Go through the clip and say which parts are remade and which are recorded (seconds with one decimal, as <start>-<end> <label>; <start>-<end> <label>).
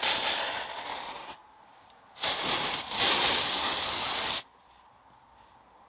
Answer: 0.0-1.4 recorded; 1.4-4.9 remade; 4.9-5.9 recorded